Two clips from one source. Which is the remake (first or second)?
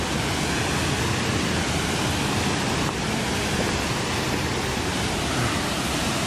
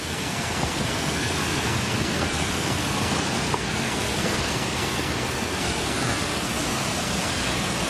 second